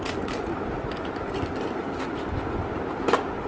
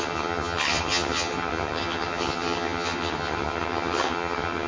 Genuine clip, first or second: first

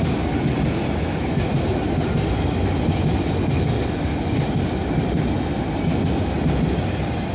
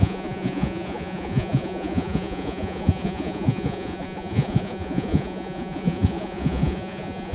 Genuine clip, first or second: first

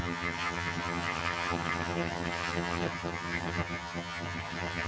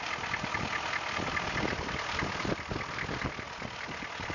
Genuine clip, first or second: second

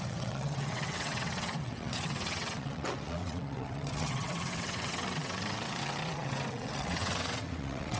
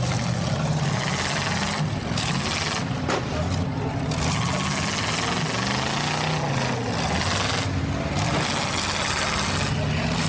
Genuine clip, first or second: second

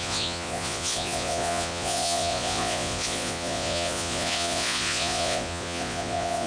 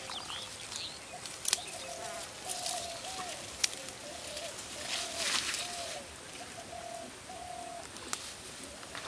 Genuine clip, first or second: second